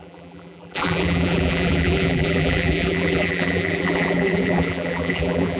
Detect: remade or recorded remade